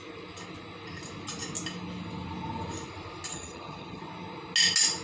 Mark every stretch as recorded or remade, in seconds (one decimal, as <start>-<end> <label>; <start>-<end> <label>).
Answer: 0.0-3.3 recorded; 3.3-4.0 remade; 4.0-5.0 recorded